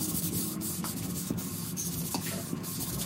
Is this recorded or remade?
remade